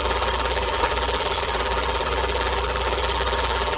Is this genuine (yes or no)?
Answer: no